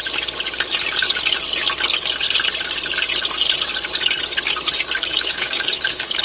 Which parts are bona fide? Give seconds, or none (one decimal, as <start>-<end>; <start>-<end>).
0.0-5.0